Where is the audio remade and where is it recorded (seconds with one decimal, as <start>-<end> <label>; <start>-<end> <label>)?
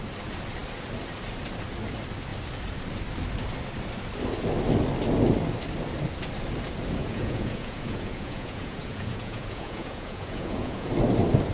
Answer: 0.0-7.0 recorded; 7.0-10.9 remade; 10.9-11.5 recorded